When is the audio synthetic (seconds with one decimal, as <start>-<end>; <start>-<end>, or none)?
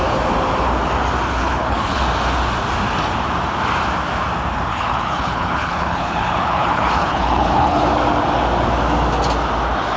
1.4-2.0; 4.7-7.9